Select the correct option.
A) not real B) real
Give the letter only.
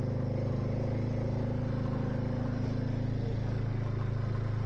B